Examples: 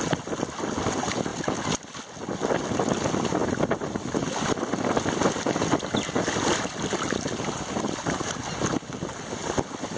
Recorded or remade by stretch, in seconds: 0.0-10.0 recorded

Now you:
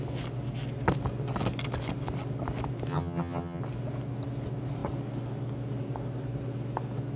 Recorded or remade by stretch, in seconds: 0.0-2.9 recorded; 2.9-3.6 remade; 3.6-7.2 recorded

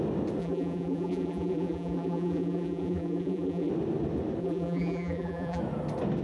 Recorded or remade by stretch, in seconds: 0.0-0.4 recorded; 0.4-3.7 remade; 3.7-4.4 recorded; 4.4-5.6 remade; 5.6-6.2 recorded